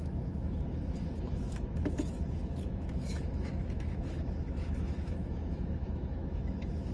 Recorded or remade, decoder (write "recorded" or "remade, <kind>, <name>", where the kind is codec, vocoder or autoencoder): remade, autoencoder, DAC-VAE